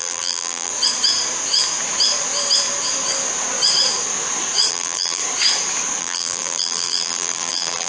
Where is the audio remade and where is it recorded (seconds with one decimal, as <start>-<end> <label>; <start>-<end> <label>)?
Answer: 0.0-0.7 remade; 0.7-4.7 recorded; 4.7-5.2 remade; 5.2-6.0 recorded; 6.0-7.9 remade